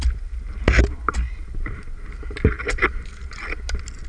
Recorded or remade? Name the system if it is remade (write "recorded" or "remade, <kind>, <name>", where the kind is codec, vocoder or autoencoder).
recorded